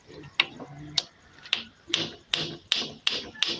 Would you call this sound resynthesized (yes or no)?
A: no